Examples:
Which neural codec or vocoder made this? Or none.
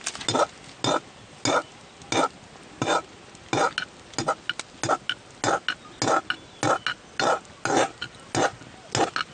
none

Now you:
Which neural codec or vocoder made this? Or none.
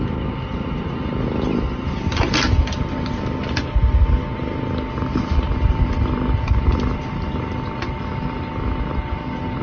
none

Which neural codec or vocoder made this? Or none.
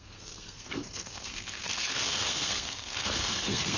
codec, SNAC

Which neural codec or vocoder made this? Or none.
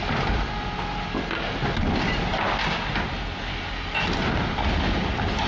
none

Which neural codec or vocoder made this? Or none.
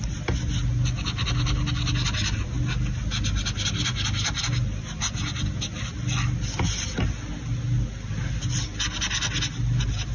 none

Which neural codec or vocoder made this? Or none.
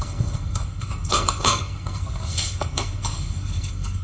codec, SNAC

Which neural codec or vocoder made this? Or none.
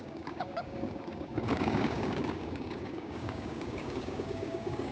codec, DAC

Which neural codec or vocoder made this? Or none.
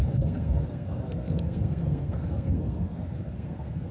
codec, SNAC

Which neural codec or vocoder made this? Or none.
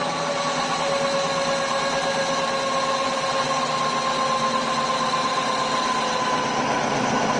none